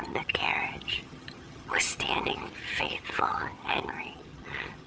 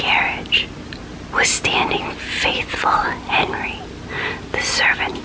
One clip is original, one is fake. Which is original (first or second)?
second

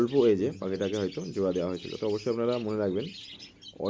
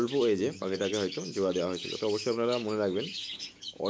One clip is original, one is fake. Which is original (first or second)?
first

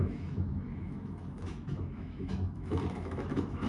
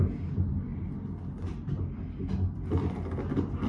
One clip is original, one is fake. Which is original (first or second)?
second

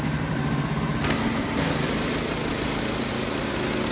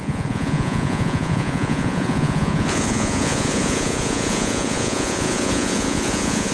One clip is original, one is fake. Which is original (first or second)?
first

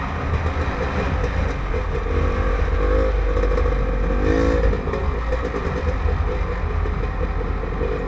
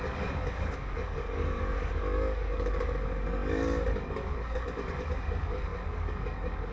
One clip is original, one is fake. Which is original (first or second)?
first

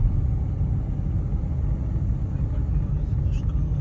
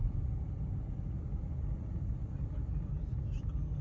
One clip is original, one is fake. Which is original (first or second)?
first